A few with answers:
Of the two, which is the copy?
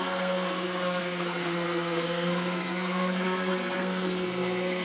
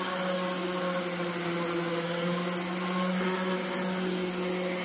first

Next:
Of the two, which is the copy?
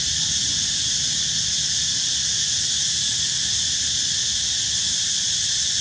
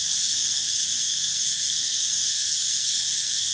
second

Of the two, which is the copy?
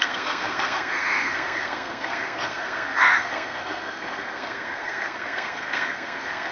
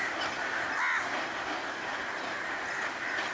first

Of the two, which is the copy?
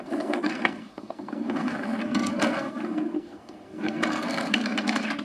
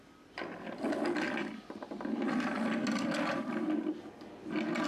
first